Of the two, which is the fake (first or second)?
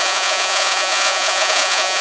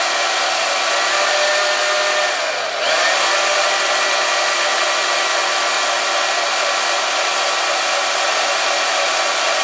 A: first